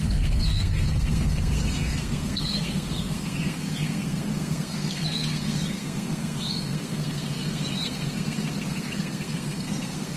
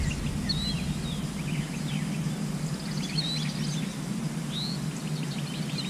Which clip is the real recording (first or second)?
second